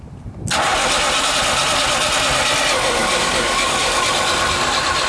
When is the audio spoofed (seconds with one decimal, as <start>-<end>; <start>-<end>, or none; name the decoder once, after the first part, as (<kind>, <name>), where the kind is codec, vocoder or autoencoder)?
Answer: 3.0-4.0 (codec, DAC)